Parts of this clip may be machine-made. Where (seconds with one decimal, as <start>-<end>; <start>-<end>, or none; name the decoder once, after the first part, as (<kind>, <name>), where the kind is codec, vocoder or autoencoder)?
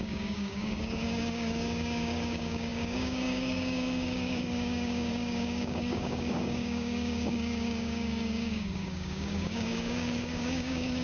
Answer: 0.0-11.0 (codec, DAC)